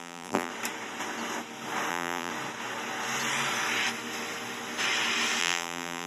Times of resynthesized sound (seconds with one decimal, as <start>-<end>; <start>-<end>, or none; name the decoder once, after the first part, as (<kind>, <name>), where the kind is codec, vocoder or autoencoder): 0.0-0.5 (vocoder, BigVGAN v2); 1.9-2.3; 5.4-6.1